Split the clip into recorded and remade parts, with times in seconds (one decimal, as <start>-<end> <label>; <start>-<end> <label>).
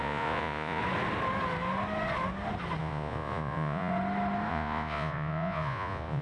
0.0-0.8 remade; 0.8-2.8 recorded; 2.8-3.9 remade; 3.9-4.5 recorded; 4.5-6.2 remade